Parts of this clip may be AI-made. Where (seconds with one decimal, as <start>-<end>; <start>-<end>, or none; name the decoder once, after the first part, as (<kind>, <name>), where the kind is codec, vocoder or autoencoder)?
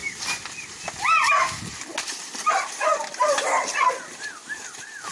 none